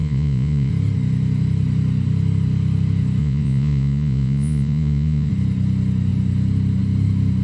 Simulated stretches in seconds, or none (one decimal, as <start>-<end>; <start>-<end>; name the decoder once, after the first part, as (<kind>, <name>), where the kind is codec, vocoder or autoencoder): 0.0-0.7 (vocoder, Vocos); 3.2-5.3